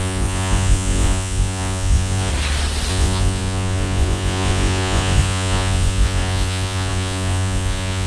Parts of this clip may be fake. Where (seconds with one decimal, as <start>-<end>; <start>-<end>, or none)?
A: 0.0-2.3; 2.9-8.1